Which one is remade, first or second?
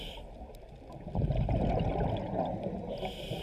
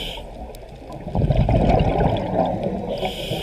first